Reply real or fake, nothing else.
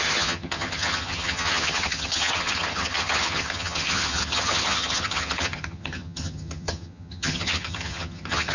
fake